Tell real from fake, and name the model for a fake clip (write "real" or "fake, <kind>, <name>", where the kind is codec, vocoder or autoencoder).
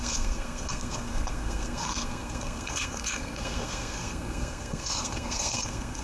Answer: fake, codec, SNAC